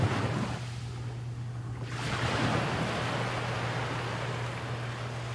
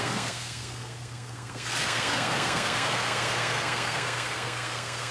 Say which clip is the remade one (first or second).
second